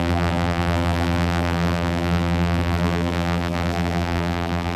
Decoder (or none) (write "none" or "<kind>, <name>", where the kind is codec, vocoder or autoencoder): vocoder, BigVGAN v2